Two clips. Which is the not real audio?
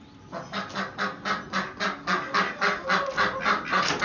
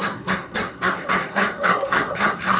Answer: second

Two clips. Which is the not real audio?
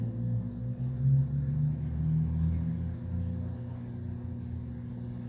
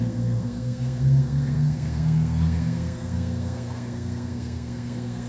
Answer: second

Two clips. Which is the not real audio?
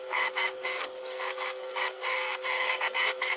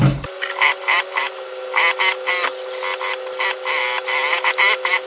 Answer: first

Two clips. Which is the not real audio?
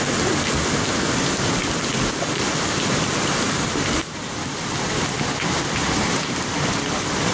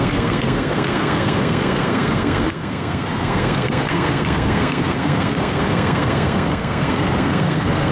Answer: second